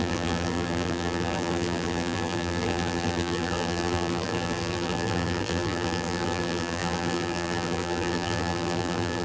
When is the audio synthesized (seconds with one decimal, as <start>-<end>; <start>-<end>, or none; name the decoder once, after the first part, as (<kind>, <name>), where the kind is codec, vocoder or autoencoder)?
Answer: 0.0-9.2 (vocoder, BigVGAN v2)